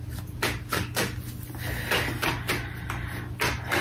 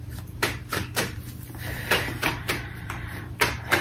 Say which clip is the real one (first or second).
first